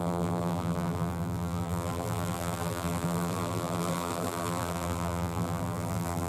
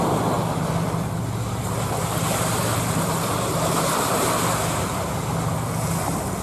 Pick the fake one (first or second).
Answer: first